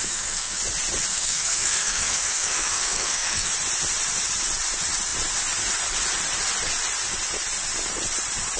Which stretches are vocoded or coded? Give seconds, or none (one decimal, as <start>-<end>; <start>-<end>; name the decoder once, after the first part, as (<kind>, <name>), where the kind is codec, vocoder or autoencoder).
0.0-0.6 (codec, SNAC); 1.1-3.5